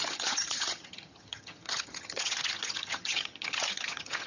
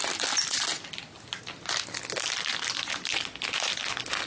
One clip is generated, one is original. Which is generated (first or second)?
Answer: first